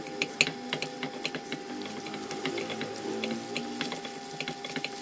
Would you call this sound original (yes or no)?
yes